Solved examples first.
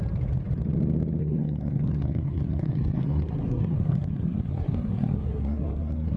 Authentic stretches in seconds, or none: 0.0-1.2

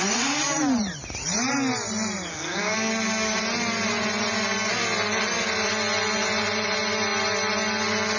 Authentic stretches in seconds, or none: 0.0-2.3; 2.9-8.2